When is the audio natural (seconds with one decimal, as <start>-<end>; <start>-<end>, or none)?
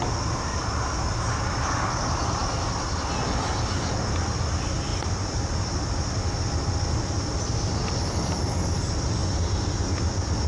0.0-4.9; 5.4-9.2; 10.0-10.5